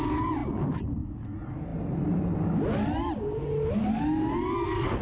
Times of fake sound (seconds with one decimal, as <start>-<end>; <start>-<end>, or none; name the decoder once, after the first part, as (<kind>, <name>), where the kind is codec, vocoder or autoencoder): none